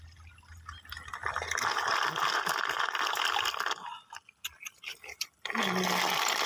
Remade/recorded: recorded